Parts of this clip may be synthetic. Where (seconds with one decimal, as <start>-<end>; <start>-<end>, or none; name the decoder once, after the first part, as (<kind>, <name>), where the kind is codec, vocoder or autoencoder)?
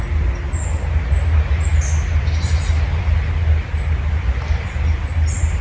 none